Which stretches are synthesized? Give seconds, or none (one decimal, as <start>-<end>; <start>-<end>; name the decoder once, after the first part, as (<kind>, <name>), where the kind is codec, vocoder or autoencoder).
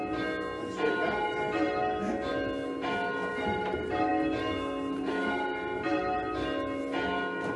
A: none